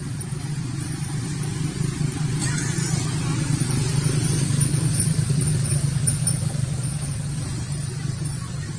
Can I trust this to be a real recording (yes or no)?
no